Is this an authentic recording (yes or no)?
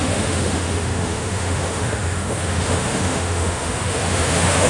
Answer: no